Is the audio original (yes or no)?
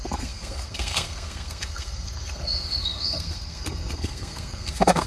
no